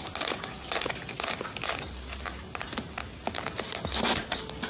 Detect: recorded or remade recorded